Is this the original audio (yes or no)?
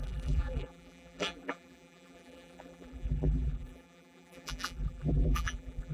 no